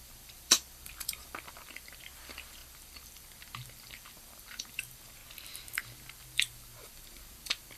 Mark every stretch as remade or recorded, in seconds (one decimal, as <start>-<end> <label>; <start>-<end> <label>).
0.0-5.2 remade; 5.2-5.8 recorded; 5.8-7.8 remade